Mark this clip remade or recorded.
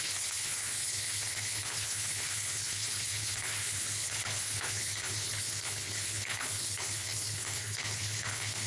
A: remade